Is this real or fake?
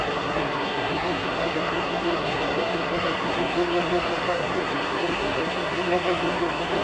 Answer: fake